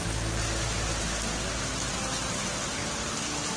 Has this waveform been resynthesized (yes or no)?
no